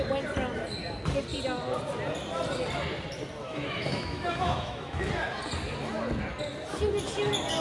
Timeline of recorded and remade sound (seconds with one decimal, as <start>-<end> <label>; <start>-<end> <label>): 0.0-3.4 recorded; 3.4-5.1 remade; 5.1-7.6 recorded